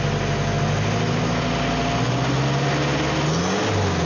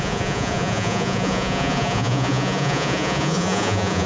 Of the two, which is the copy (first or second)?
second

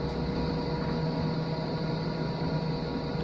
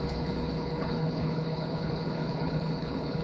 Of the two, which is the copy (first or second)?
second